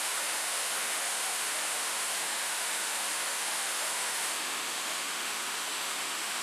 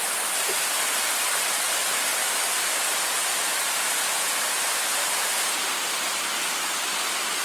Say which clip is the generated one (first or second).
first